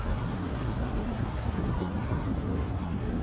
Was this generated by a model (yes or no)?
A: yes